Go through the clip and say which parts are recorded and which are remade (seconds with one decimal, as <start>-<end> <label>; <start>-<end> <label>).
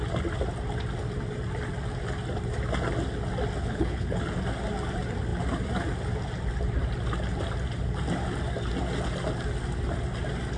0.0-3.6 recorded; 3.6-4.2 remade; 4.2-10.6 recorded